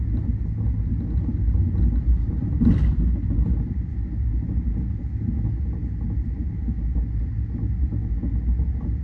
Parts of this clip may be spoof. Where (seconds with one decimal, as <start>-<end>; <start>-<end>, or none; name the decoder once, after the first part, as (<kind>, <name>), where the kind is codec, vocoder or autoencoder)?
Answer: none